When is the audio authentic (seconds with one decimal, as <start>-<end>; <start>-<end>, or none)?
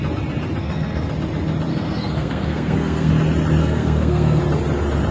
0.0-0.6; 1.1-1.7; 3.1-3.6; 4.4-5.1